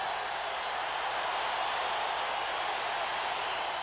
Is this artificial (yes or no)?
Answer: no